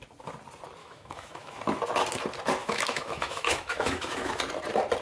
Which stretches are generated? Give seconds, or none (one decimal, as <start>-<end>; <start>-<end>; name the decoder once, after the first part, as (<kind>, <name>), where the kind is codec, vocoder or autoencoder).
0.8-1.6 (autoencoder, DAC-VAE); 2.6-4.4